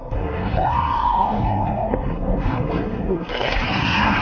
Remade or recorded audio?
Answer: remade